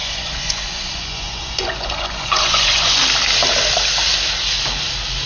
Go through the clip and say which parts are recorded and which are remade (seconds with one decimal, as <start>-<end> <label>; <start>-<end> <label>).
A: 0.0-3.0 remade; 3.0-5.3 recorded